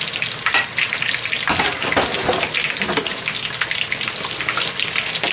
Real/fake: real